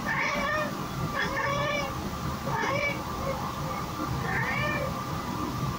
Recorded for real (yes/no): yes